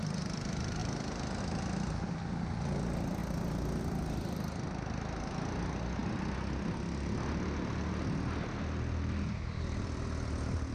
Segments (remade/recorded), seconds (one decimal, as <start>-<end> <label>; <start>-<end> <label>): 0.0-0.8 recorded; 0.8-1.4 remade; 1.4-10.7 recorded